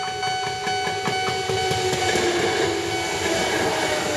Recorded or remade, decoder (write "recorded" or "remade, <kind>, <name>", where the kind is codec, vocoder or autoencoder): recorded